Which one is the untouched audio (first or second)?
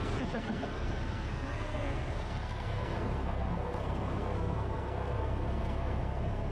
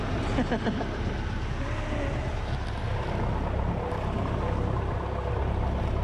second